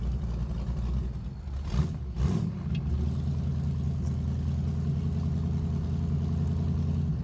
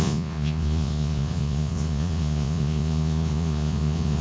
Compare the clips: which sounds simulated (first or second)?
second